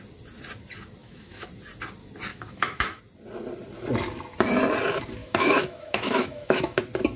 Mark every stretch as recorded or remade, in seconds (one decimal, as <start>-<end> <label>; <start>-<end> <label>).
0.0-1.0 recorded; 1.0-1.5 remade; 1.5-2.3 recorded; 2.3-3.0 remade; 3.0-5.2 recorded; 5.2-6.8 remade; 6.8-7.2 recorded